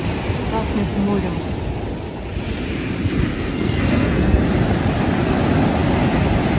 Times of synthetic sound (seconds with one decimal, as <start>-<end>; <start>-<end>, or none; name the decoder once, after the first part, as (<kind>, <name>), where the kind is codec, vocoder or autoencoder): 3.3-4.4 (codec, SNAC)